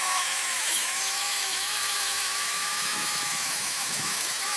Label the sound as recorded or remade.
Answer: remade